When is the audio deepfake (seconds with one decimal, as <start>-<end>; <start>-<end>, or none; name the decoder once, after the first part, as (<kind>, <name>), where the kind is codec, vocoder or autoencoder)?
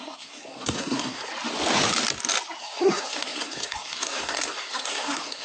0.0-1.3 (codec, SNAC); 2.6-5.4